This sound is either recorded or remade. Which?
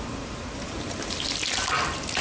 recorded